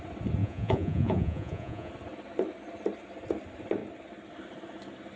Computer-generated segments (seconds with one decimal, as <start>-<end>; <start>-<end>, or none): 0.4-1.9